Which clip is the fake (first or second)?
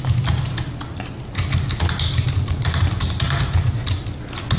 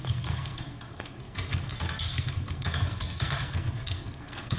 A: second